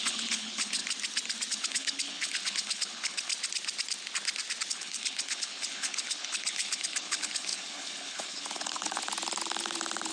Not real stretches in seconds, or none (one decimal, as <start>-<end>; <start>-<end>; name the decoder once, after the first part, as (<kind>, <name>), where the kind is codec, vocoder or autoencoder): 0.0-0.8 (codec, HILCodec); 1.5-3.3; 4.7-9.0